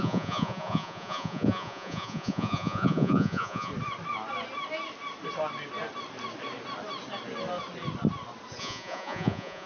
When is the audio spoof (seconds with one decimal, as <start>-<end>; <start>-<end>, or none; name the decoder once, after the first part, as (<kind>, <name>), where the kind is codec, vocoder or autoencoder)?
0.0-3.7 (vocoder, Vocos); 8.6-9.7